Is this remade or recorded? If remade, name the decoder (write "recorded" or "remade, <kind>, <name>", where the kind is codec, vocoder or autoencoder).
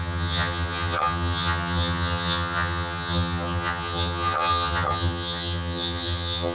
remade, vocoder, HiFi-GAN